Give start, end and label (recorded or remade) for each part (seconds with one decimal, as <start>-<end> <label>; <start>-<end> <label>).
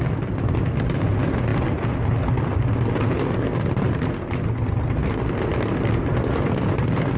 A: 0.0-7.2 recorded